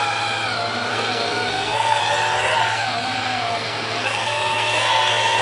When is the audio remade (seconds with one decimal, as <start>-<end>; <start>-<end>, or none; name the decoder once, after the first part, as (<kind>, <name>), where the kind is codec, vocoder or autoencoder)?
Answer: 0.9-2.0 (codec, SNAC); 2.6-5.4